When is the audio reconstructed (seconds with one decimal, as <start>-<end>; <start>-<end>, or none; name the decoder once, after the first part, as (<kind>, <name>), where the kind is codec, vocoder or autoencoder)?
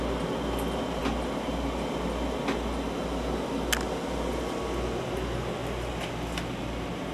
none